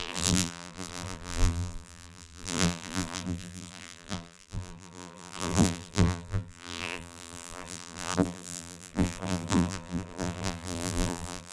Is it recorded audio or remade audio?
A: remade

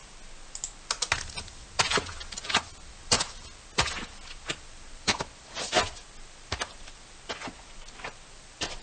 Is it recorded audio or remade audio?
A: recorded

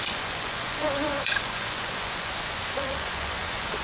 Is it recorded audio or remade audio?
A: remade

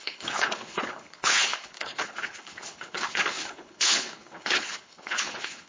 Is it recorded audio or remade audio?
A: remade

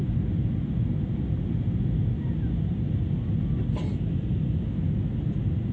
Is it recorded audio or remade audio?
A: recorded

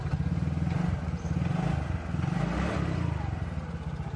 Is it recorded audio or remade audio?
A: recorded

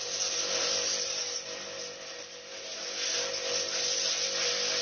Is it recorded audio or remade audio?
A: recorded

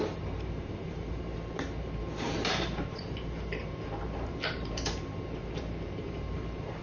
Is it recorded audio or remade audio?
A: remade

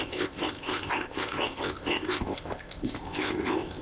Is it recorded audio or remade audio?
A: remade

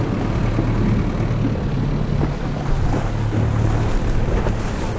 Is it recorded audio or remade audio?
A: recorded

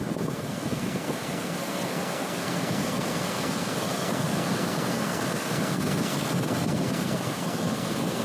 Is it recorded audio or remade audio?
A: remade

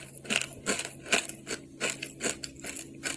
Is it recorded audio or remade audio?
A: recorded